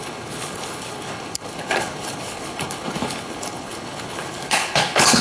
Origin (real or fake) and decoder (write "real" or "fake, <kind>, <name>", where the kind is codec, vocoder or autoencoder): fake, codec, HILCodec